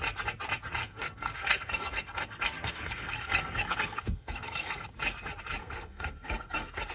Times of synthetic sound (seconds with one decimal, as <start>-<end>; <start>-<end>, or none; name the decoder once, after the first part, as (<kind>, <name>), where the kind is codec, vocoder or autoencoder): 0.8-4.9 (codec, SNAC); 5.6-6.9